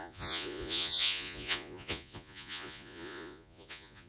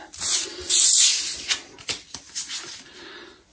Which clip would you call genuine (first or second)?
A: second